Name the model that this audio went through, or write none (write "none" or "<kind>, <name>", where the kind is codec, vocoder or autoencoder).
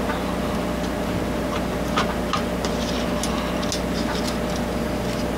none